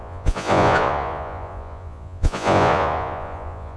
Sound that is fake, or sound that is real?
fake